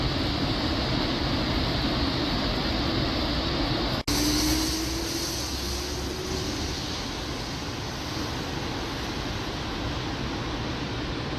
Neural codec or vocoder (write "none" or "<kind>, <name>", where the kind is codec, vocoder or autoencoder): none